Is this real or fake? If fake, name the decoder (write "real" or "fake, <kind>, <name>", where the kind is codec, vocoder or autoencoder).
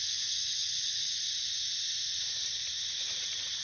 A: real